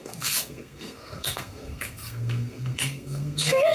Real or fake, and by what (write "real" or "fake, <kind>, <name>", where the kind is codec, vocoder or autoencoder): fake, codec, SNAC